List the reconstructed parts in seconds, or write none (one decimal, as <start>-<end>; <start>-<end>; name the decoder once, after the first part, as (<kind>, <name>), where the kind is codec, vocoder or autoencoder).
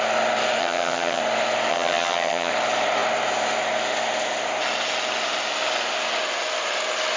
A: 0.6-1.2 (vocoder, HiFi-GAN); 1.7-2.5